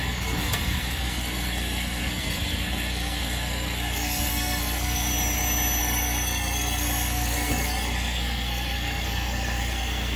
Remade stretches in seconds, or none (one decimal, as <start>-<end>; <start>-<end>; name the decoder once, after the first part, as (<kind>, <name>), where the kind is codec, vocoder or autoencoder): 0.0-5.1 (codec, SNAC); 5.8-10.2